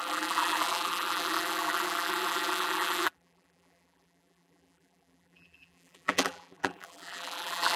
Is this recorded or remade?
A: remade